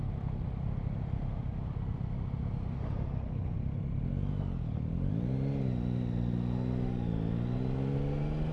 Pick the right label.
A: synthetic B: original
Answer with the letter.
B